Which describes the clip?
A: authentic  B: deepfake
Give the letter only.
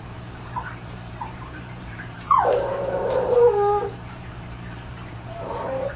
B